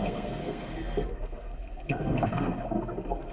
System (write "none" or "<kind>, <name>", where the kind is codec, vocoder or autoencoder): codec, SNAC